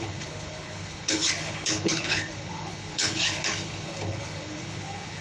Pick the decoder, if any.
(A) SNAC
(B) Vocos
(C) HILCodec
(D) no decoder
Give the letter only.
C